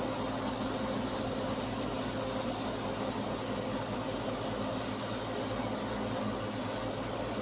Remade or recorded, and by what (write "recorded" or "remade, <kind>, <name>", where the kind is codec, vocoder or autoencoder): recorded